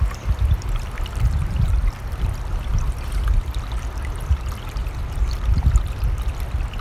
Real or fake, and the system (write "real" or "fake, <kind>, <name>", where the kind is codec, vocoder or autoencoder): fake, vocoder, BigVGAN v2